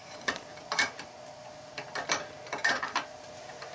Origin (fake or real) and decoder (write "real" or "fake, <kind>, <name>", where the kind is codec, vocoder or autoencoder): fake, vocoder, BigVGAN v2